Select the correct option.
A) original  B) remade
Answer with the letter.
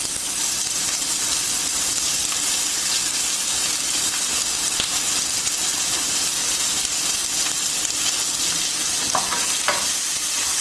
A